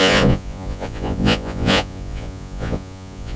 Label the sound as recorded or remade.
remade